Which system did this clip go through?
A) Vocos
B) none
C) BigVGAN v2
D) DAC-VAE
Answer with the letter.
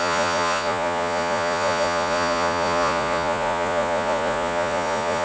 A